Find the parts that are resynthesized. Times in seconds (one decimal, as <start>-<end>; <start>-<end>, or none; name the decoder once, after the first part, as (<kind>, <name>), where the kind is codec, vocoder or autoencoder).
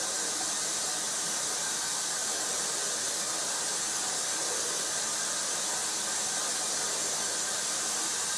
0.0-2.2 (vocoder, BigVGAN v2); 4.1-5.8; 7.6-8.4